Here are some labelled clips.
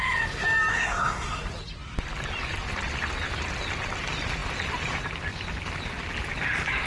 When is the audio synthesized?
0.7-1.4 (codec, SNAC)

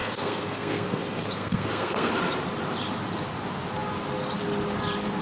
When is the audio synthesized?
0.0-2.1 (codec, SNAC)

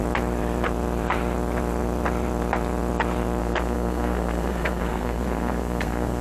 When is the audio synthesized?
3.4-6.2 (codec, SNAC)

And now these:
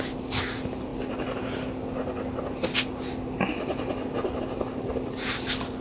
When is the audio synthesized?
none

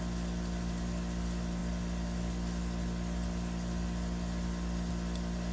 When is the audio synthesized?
none